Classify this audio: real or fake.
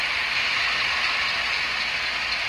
real